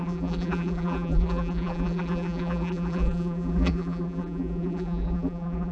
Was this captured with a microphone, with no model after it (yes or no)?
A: no